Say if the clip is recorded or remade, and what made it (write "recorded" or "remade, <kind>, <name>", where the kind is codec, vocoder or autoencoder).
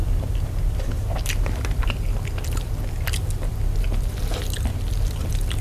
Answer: remade, vocoder, BigVGAN v2